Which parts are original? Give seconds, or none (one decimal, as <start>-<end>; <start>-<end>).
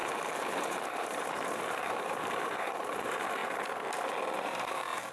3.4-4.4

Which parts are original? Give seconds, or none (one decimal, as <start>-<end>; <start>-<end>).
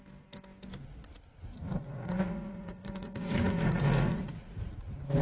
0.0-1.8; 4.7-5.2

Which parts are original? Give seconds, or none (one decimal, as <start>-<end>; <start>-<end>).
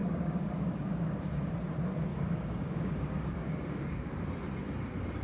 1.5-2.1; 4.1-5.2